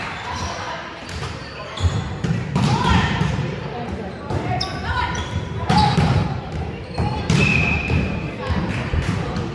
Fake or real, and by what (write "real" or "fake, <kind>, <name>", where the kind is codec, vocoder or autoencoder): fake, vocoder, BigVGAN v2